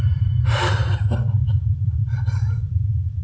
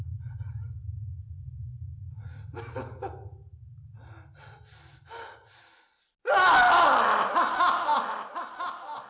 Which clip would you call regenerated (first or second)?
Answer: first